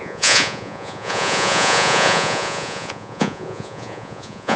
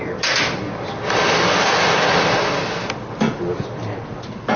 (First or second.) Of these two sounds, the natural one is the second